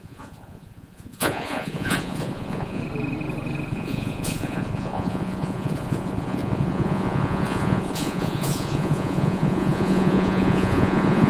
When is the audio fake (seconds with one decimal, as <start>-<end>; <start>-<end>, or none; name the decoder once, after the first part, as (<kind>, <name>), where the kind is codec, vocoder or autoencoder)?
0.0-2.8 (vocoder, Vocos); 3.7-11.3